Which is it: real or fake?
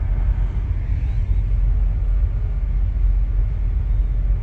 real